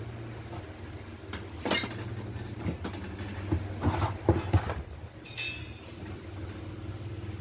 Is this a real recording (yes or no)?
yes